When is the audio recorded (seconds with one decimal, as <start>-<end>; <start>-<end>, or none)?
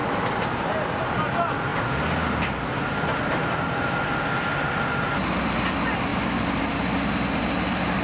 0.0-8.0